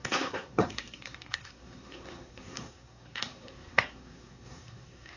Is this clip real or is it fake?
fake